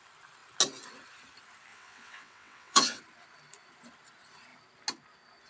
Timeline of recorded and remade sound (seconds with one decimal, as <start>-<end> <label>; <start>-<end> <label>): 0.0-1.7 recorded; 1.7-3.0 remade; 3.0-5.5 recorded